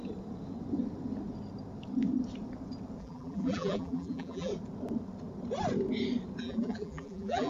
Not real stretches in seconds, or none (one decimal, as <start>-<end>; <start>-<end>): 3.0-4.5; 6.4-7.5